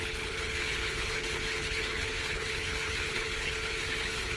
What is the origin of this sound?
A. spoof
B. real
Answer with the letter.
A